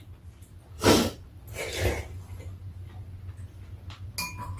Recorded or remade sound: recorded